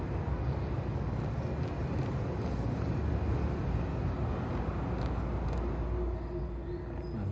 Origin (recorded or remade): recorded